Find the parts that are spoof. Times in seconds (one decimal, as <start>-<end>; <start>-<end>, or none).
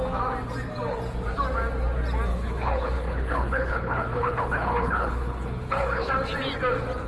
2.3-6.1